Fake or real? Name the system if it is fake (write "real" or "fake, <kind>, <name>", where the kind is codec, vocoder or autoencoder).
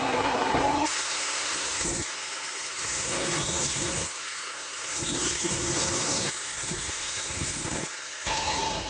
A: fake, codec, SNAC